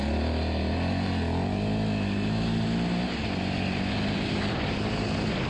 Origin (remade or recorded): recorded